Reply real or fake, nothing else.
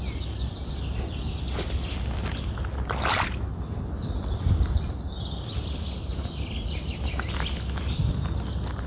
real